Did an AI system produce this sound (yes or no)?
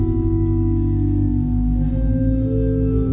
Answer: no